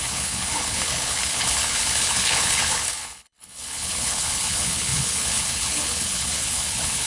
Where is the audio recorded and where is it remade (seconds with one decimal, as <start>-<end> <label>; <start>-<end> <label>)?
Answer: 0.0-7.1 remade